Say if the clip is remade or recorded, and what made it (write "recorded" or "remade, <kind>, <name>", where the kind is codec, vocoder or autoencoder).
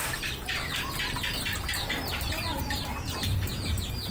recorded